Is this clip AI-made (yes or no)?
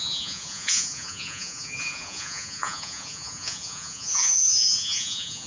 yes